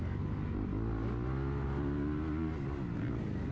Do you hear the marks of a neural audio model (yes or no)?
no